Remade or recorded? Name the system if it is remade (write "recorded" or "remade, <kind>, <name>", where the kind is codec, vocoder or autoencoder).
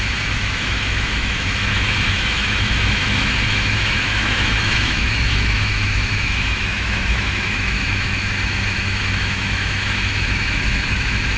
remade, autoencoder, DAC-VAE